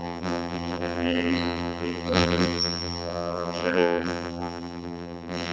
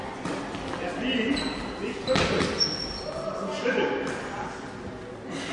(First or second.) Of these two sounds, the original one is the second